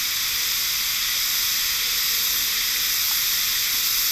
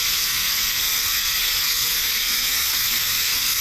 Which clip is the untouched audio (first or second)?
first